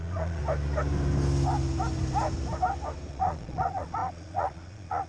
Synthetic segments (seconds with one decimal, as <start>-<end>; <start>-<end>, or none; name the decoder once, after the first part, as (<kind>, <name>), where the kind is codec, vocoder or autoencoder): 0.0-0.4 (vocoder, Vocos); 3.1-5.1